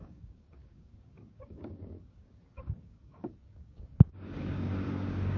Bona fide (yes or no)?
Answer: no